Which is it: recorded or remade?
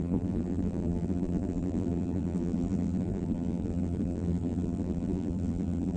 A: remade